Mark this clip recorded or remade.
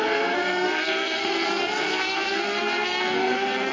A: remade